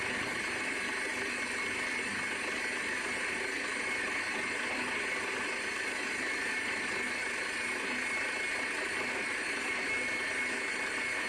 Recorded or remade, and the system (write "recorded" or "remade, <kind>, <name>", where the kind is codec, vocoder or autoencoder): recorded